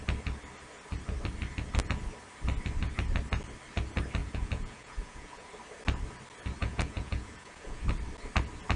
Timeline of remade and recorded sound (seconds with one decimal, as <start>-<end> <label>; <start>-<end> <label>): 0.0-4.2 recorded; 4.2-5.5 remade; 5.5-6.6 recorded; 6.6-7.8 remade; 7.8-8.8 recorded